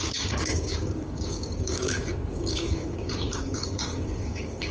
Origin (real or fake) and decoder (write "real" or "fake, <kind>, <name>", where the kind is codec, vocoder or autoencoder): fake, codec, DAC